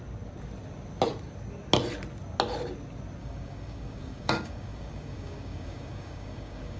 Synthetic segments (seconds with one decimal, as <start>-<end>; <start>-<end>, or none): 3.2-6.8